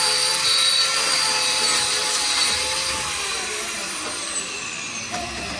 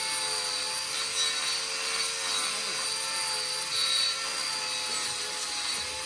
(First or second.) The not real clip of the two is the first